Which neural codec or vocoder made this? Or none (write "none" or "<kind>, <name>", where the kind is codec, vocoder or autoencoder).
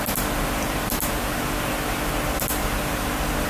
none